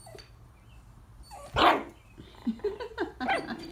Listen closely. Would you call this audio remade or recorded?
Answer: recorded